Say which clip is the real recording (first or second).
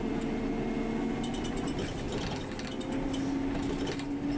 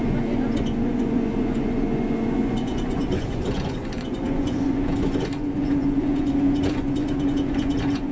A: first